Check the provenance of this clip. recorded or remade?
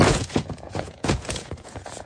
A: remade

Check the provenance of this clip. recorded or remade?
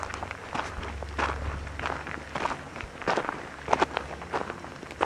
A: recorded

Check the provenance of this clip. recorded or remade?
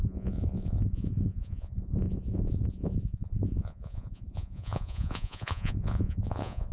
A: remade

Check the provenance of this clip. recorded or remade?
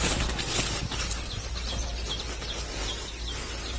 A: recorded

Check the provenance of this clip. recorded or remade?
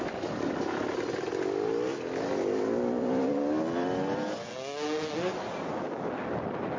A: recorded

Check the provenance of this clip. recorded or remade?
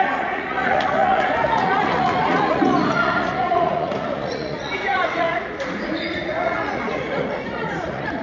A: remade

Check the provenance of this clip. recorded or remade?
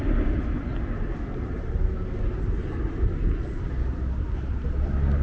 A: recorded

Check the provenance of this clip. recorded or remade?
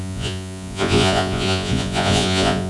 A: remade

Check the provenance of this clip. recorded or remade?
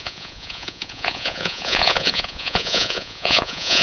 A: remade